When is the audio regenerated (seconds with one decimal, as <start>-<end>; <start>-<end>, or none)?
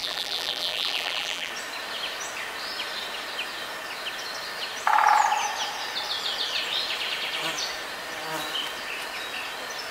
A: 0.0-1.5